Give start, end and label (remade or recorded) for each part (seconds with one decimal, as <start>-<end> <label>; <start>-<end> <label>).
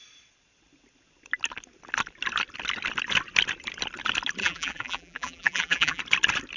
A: 0.0-4.4 recorded; 4.4-6.0 remade; 6.0-6.6 recorded